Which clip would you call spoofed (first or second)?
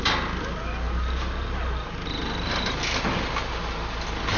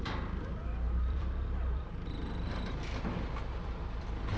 second